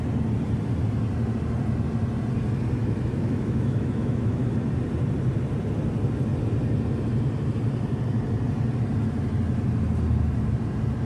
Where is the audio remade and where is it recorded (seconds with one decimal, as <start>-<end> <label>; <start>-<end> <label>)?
0.0-2.8 recorded; 2.8-4.4 remade; 4.4-11.0 recorded